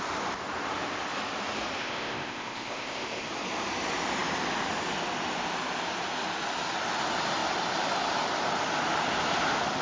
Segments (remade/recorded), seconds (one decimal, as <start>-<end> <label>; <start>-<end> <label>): 0.0-1.8 recorded; 1.8-3.3 remade; 3.3-9.8 recorded